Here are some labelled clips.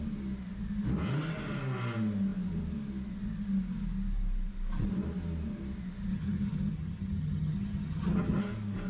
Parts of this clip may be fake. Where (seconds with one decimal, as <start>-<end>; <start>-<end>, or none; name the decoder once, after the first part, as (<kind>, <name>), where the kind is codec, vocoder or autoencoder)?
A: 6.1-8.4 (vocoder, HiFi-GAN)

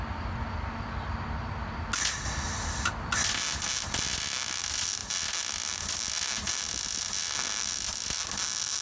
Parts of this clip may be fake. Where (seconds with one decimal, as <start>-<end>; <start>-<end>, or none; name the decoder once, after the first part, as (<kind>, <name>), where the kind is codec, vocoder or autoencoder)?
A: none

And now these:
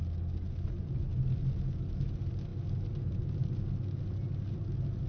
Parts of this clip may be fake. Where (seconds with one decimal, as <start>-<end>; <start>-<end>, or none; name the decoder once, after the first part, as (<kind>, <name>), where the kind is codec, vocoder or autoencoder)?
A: none